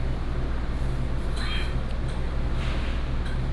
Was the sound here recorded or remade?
recorded